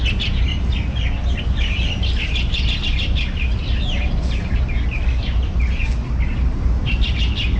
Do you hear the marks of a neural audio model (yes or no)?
no